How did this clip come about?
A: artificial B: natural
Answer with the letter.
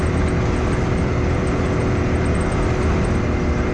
B